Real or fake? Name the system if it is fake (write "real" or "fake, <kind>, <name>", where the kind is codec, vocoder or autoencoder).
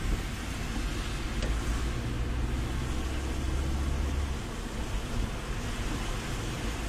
real